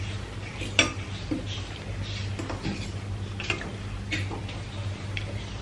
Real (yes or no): yes